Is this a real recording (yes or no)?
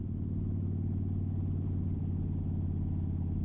yes